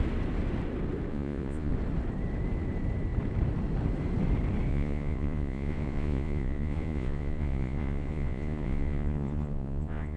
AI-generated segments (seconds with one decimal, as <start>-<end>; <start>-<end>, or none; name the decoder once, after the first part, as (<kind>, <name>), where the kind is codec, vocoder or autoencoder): 1.1-1.7 (vocoder, Vocos); 4.7-10.2

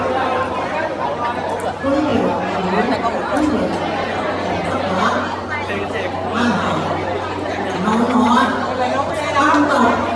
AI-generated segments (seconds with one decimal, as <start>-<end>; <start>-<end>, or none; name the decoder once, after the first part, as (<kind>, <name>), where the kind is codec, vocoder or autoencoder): none

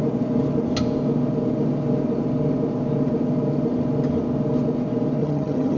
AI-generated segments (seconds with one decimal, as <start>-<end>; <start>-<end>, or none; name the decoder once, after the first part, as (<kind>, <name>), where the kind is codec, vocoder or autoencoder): 5.2-5.8 (vocoder, HiFi-GAN)